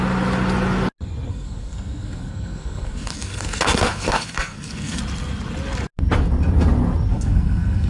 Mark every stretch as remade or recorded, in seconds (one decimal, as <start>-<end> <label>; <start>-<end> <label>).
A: 0.0-1.3 recorded; 1.3-5.0 remade; 5.0-7.1 recorded; 7.1-7.9 remade